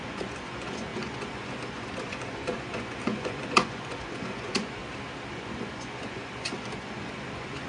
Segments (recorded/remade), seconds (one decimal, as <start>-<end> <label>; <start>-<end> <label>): 0.0-4.8 remade; 4.8-5.3 recorded; 5.3-7.7 remade